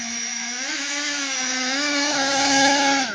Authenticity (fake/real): fake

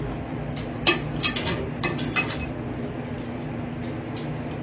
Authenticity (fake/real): real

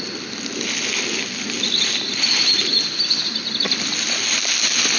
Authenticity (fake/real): real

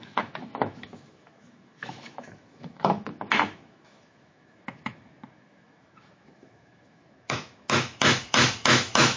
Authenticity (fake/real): fake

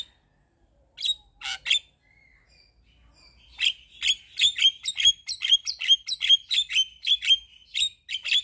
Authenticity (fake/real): real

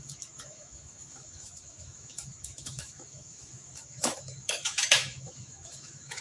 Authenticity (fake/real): fake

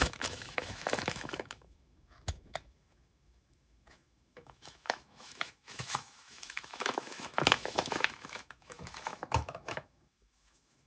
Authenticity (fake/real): fake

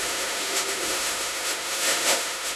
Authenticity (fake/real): fake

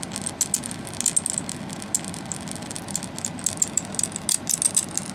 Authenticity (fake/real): real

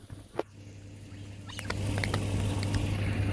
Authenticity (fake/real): real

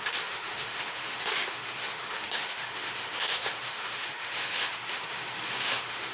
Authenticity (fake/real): fake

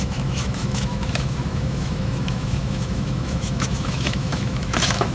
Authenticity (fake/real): fake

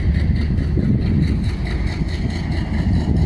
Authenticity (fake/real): real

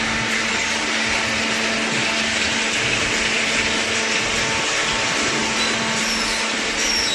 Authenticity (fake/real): real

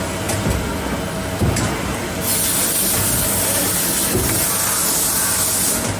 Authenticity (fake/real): real